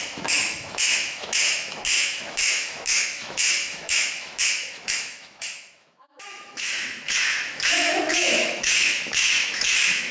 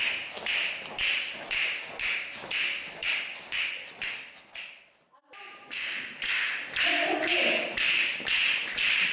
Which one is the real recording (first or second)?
second